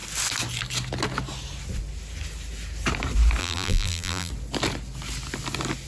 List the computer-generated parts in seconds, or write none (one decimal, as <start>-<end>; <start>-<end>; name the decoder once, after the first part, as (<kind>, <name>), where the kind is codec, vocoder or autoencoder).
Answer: 3.4-4.3 (vocoder, BigVGAN v2)